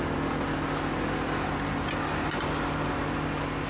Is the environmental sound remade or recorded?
recorded